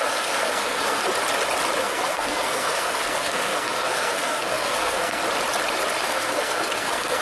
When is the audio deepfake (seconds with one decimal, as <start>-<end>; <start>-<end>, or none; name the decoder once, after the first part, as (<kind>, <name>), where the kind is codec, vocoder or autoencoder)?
0.0-1.1 (codec, SNAC); 1.8-5.2; 6.0-7.2